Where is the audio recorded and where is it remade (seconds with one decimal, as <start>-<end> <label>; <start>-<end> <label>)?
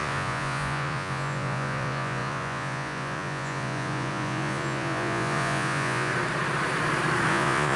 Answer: 0.0-6.1 remade; 6.1-7.3 recorded; 7.3-7.8 remade